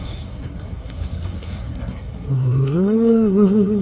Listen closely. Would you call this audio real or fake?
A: fake